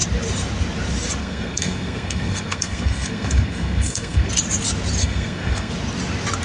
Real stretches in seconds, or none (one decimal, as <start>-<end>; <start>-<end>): 0.0-1.2; 4.3-5.0; 5.7-6.4